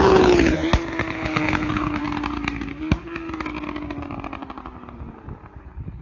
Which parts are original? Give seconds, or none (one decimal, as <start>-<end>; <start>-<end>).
0.6-1.1; 2.0-5.6